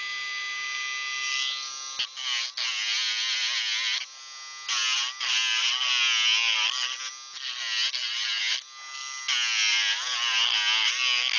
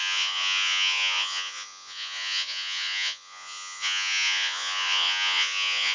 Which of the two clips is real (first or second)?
first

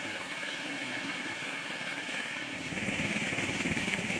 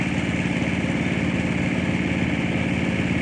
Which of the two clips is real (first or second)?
second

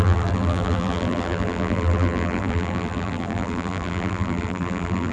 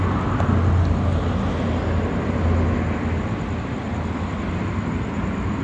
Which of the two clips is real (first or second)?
second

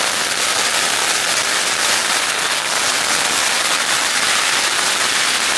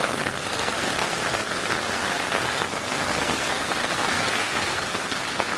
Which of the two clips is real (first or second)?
first